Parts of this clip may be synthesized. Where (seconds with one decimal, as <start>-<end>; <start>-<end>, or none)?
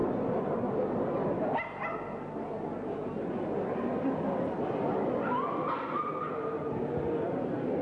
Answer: none